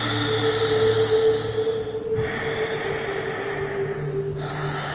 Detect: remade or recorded recorded